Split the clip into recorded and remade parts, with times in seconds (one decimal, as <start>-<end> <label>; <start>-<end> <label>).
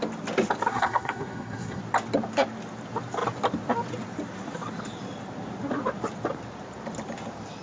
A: 0.0-0.7 recorded; 0.7-1.8 remade; 1.8-7.6 recorded